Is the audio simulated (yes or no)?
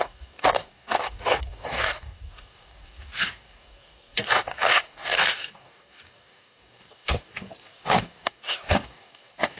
yes